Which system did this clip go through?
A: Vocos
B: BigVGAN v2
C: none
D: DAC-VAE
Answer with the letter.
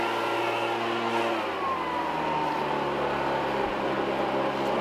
C